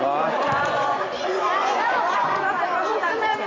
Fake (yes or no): yes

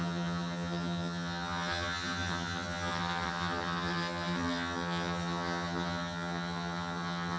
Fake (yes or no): yes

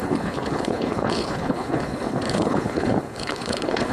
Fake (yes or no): yes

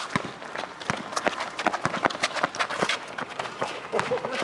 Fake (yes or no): no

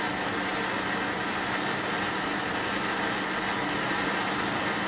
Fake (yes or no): no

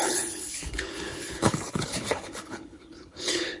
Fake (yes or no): yes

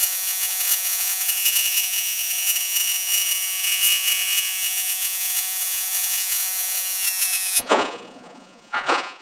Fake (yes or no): yes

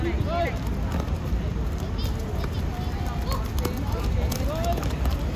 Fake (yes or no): no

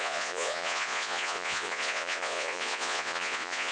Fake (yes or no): yes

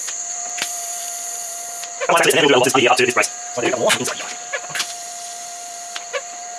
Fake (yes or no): yes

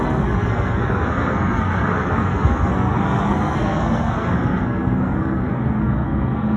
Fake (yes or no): yes